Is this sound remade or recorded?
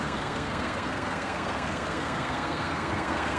remade